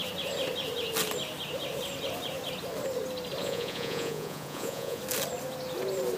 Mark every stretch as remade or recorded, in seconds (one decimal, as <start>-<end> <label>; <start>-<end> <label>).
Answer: 0.0-3.4 recorded; 3.4-5.0 remade; 5.0-6.2 recorded